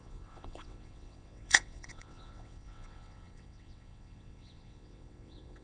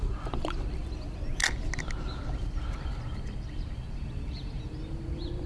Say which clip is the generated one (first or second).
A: first